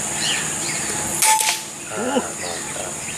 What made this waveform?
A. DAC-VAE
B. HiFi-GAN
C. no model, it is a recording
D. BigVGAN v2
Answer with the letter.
C